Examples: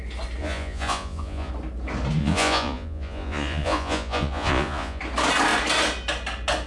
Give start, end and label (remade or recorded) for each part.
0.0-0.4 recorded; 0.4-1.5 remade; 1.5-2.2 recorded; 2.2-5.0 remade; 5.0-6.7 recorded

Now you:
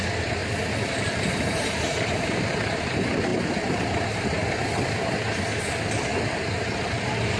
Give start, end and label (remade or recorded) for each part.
0.0-0.4 remade; 0.4-1.3 recorded; 1.3-4.4 remade; 4.4-6.3 recorded; 6.3-7.4 remade

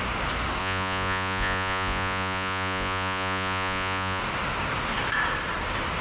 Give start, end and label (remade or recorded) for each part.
0.0-0.6 recorded; 0.6-4.2 remade; 4.2-6.0 recorded

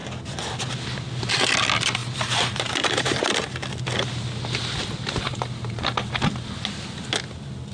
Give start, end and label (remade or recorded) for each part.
0.0-2.0 recorded; 2.0-3.6 remade; 3.6-5.3 recorded; 5.3-6.2 remade; 6.2-7.7 recorded